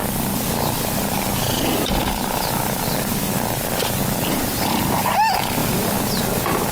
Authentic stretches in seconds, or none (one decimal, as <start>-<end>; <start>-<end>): 0.0-4.0